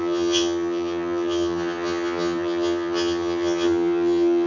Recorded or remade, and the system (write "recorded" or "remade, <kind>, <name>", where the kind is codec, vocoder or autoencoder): remade, vocoder, HiFi-GAN